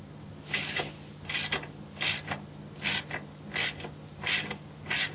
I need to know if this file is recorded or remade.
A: recorded